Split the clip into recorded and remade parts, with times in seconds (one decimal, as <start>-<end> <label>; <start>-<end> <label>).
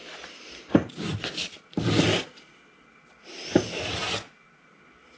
0.0-3.1 remade; 3.1-5.2 recorded